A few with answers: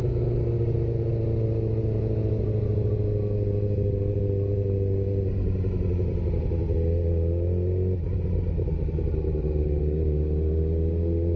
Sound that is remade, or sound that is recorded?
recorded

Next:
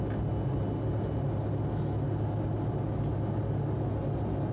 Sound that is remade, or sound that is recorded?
recorded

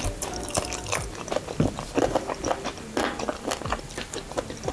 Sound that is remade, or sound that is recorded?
recorded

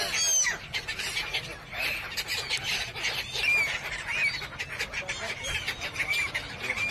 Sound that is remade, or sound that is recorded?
recorded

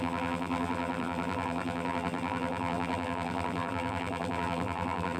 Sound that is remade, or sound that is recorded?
remade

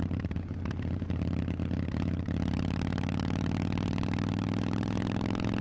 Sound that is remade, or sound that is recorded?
remade